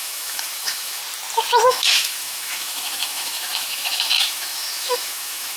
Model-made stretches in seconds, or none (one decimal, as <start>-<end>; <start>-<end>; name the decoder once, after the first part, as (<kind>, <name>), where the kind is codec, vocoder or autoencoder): 0.0-1.0 (autoencoder, DAC-VAE); 1.7-5.6